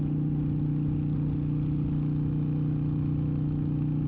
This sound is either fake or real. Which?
real